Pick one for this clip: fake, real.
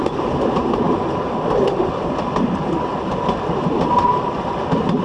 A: real